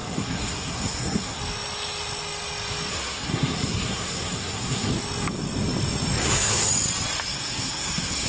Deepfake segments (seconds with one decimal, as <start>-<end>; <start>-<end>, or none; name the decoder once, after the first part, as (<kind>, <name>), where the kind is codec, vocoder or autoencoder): 0.0-1.4 (codec, SNAC); 2.9-4.9; 6.2-6.7; 7.3-8.3

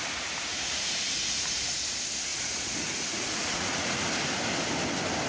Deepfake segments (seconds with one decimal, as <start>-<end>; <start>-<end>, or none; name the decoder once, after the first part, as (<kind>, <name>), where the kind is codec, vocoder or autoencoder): 0.5-1.8 (vocoder, Vocos); 2.3-4.1

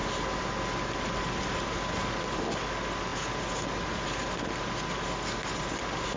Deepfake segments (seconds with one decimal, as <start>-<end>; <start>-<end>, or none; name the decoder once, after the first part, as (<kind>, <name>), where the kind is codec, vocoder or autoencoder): none

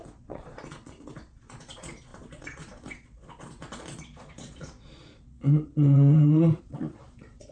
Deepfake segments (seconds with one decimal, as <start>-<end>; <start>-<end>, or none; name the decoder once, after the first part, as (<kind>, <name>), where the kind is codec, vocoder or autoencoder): 0.0-7.5 (vocoder, Vocos)